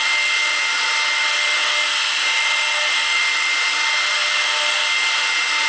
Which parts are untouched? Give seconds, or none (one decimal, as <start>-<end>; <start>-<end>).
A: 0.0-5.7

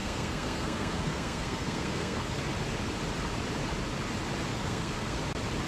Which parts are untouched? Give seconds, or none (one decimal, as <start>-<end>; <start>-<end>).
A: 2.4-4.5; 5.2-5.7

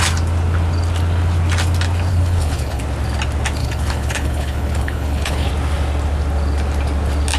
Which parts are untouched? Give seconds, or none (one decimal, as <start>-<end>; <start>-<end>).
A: 0.0-2.1; 2.8-3.6; 5.5-7.4